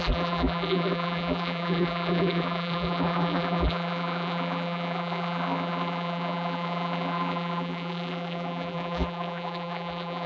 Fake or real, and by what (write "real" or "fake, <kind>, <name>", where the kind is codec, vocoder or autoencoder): fake, vocoder, BigVGAN v2